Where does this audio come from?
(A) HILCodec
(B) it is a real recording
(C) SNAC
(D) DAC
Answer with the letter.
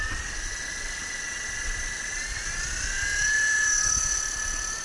B